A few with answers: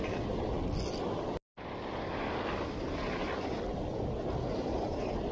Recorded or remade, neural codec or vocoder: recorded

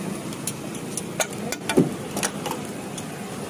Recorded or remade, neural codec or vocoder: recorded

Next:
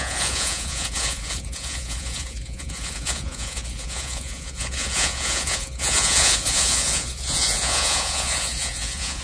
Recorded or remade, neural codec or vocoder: remade, vocoder, Vocos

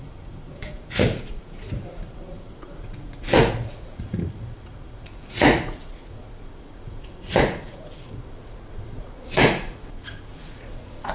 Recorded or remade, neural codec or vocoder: remade, vocoder, Vocos